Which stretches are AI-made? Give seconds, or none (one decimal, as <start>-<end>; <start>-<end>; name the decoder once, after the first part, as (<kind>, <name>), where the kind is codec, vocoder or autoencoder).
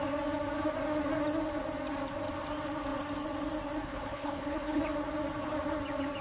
3.8-4.8 (codec, HILCodec)